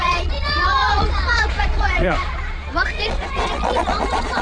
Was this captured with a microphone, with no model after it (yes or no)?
no